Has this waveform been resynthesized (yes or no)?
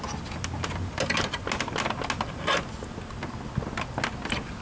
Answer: no